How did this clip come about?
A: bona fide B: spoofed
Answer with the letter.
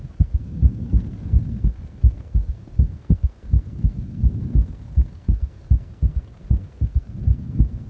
B